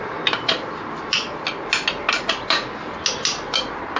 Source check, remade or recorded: recorded